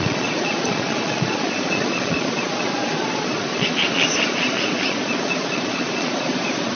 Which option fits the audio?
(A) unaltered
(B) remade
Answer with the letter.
B